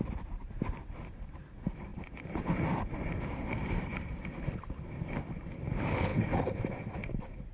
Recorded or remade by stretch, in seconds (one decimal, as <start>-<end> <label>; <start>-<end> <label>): 0.0-7.5 remade